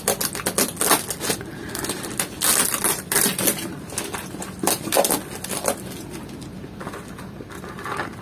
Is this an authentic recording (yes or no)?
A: yes